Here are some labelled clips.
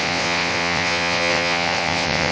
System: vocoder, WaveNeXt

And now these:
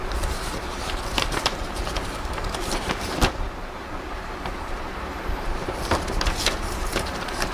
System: vocoder, BigVGAN v2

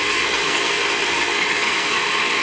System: codec, SNAC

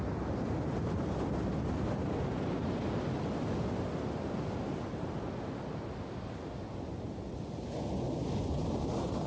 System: none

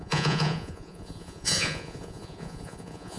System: vocoder, Vocos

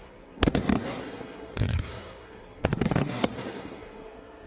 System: codec, SNAC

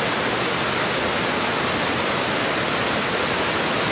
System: none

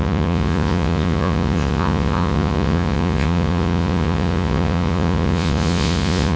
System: vocoder, Vocos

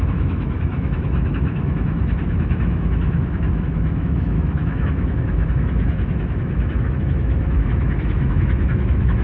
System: autoencoder, DAC-VAE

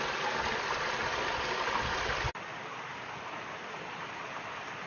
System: none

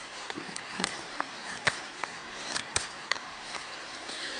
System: codec, SNAC